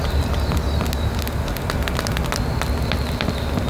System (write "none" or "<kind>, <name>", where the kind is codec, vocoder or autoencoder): none